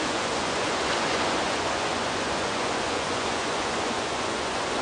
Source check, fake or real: fake